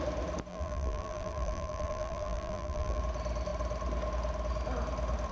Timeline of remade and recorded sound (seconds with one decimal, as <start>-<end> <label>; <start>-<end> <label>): 0.0-0.5 recorded; 0.5-3.0 remade; 3.0-5.3 recorded